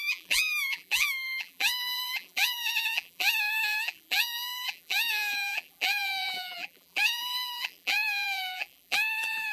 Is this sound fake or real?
fake